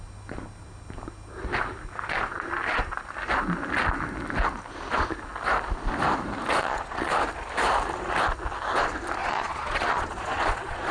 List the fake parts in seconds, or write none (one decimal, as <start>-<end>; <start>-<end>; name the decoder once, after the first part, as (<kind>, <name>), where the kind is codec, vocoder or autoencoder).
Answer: 6.6-7.1 (vocoder, Vocos); 9.2-10.9